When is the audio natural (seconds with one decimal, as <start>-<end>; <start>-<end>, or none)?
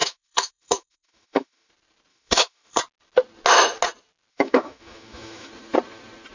1.7-2.1; 2.8-4.3; 5.5-6.3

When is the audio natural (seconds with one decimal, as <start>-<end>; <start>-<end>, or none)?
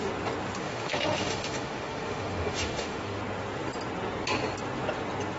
0.0-0.6; 3.2-5.4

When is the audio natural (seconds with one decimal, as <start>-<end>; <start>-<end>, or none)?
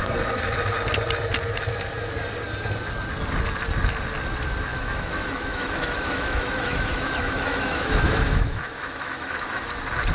0.0-4.7; 9.7-10.1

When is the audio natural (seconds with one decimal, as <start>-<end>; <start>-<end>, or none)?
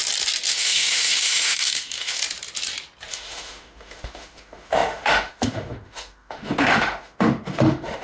0.0-0.5; 2.2-3.1